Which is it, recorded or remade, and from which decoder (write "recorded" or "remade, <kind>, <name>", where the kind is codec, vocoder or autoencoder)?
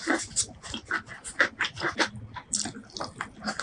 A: recorded